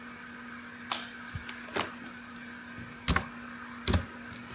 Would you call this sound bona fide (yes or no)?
no